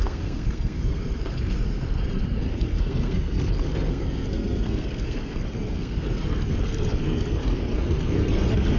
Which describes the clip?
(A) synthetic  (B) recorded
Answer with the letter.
A